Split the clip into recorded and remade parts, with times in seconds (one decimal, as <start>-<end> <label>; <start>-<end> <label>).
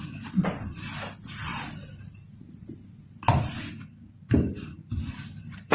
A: 0.0-5.7 recorded